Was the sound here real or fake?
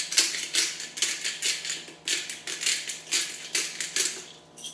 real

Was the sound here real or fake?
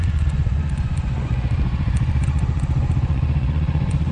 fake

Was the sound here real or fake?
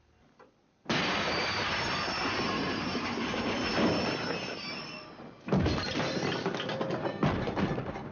real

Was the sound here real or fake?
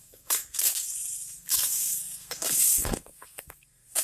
fake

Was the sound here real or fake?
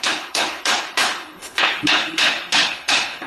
fake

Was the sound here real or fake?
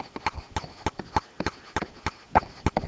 real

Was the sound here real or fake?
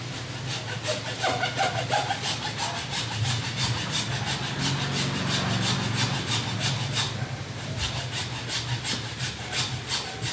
real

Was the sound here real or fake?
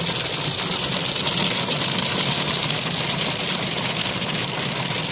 real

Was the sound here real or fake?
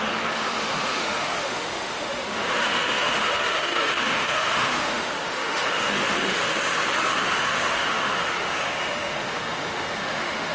fake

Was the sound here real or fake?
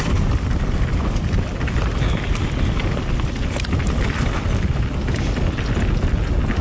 real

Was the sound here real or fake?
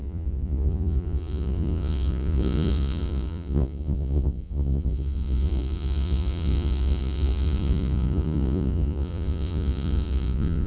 fake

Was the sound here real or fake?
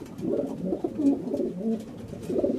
real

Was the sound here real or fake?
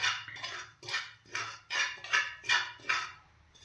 real